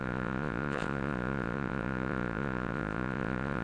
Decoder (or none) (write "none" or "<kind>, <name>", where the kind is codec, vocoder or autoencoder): vocoder, Vocos